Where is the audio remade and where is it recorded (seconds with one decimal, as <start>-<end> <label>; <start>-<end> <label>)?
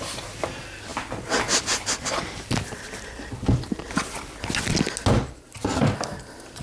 0.0-6.6 recorded